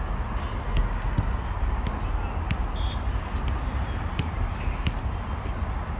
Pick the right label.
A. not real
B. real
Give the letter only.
B